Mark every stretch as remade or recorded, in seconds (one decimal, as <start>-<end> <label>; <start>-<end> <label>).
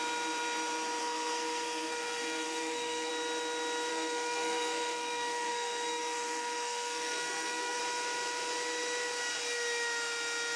0.0-1.0 recorded; 1.0-3.1 remade; 3.1-3.9 recorded; 3.9-7.8 remade; 7.8-10.6 recorded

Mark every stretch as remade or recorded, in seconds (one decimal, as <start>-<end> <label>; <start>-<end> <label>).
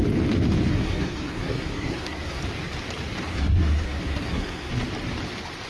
0.0-0.7 recorded; 0.7-2.4 remade; 2.4-3.3 recorded; 3.3-4.7 remade; 4.7-5.7 recorded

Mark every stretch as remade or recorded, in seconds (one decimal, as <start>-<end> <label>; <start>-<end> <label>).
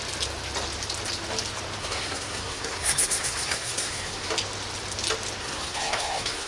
0.0-1.8 recorded; 1.8-4.3 remade; 4.3-5.4 recorded; 5.4-6.5 remade